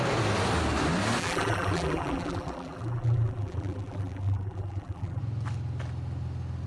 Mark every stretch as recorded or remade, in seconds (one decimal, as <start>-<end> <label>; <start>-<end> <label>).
0.0-1.2 recorded; 1.2-5.2 remade; 5.2-6.7 recorded